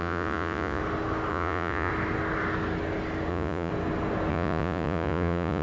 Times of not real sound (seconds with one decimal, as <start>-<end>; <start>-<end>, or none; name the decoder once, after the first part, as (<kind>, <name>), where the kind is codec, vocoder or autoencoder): 0.0-0.8 (vocoder, Vocos); 1.3-1.9; 3.3-3.7; 4.3-5.6